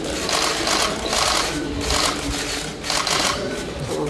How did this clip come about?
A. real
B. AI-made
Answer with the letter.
A